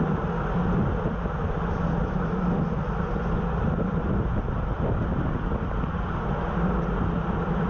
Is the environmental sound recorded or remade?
recorded